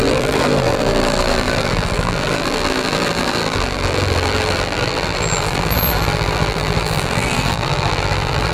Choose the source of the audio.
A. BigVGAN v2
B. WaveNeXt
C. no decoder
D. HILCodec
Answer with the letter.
A